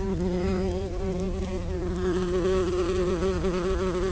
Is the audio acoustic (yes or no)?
no